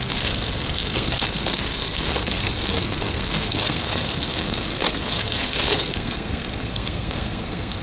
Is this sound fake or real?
fake